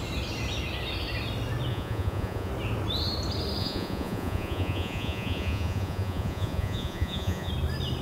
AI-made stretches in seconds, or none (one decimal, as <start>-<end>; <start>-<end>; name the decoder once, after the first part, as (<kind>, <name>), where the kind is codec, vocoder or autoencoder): 1.7-2.5 (vocoder, Vocos); 3.6-7.5